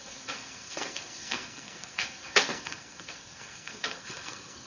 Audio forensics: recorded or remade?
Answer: remade